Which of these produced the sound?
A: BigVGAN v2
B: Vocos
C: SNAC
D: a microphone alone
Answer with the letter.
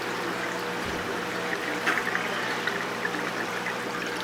D